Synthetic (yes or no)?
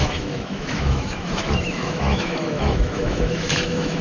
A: yes